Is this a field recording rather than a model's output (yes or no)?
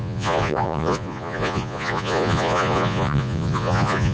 no